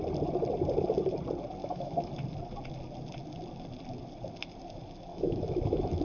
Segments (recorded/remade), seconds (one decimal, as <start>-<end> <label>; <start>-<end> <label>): 0.0-1.6 recorded; 1.6-2.1 remade; 2.1-5.1 recorded; 5.1-6.0 remade